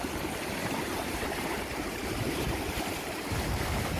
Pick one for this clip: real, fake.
fake